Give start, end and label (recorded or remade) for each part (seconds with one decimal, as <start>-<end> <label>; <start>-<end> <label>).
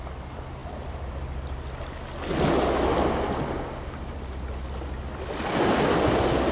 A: 0.0-6.5 recorded